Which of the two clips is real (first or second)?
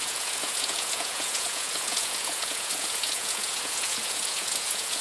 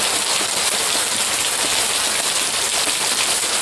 second